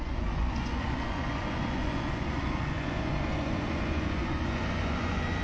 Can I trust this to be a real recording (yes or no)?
no